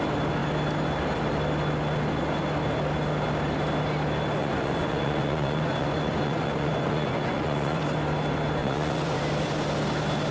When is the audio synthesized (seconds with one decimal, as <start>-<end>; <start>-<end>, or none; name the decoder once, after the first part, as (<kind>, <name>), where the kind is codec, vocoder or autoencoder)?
4.4-7.8 (vocoder, Vocos); 8.6-9.2